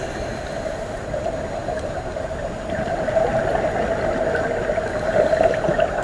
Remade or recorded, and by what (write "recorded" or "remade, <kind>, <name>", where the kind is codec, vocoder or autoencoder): recorded